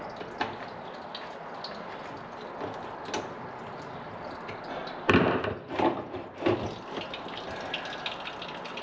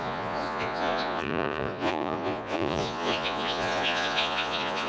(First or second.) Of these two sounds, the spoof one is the second